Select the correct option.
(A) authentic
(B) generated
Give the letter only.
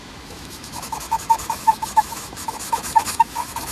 B